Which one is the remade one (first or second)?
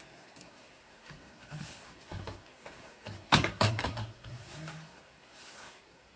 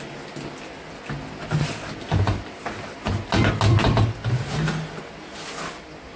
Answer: first